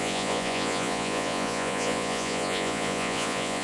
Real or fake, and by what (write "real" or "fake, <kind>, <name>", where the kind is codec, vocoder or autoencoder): fake, vocoder, Vocos